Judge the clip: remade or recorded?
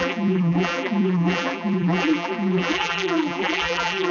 remade